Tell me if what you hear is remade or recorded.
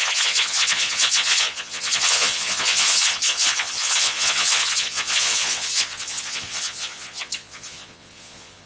remade